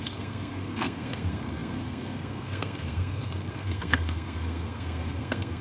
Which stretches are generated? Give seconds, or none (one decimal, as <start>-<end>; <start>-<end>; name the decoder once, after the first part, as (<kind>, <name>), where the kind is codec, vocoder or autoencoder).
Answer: 0.0-5.6 (codec, SNAC)

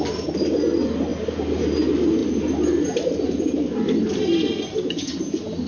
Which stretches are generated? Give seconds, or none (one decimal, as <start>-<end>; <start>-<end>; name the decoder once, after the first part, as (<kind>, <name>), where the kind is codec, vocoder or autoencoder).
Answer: 2.2-3.4 (vocoder, BigVGAN v2)

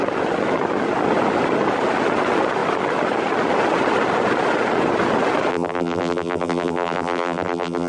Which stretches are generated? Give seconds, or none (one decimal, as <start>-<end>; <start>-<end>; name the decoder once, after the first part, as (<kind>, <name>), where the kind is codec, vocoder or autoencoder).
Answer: 5.5-7.9 (vocoder, BigVGAN v2)

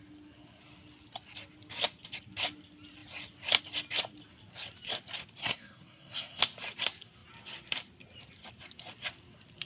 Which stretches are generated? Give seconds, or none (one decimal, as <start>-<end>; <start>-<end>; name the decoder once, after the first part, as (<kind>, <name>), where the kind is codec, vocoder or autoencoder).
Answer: 5.4-6.4 (codec, SNAC)

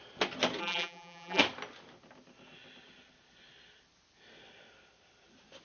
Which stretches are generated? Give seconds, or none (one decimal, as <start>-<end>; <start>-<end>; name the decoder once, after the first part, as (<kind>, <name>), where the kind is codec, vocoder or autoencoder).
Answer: 0.6-1.4 (vocoder, BigVGAN v2)

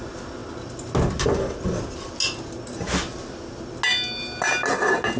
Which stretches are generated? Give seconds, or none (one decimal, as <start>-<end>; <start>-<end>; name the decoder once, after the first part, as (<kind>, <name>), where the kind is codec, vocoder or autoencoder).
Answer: none